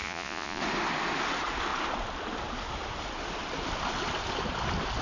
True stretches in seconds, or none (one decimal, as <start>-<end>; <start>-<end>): 0.6-5.0